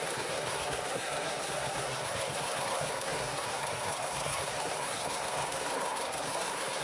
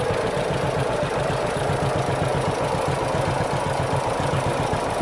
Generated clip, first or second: first